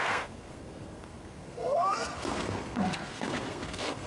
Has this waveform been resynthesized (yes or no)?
yes